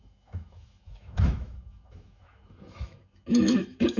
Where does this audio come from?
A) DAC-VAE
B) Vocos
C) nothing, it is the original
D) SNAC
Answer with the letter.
A